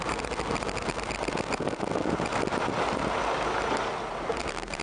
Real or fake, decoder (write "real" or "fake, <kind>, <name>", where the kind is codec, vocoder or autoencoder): real